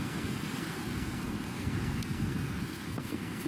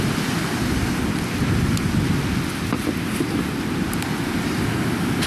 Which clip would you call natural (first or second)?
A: second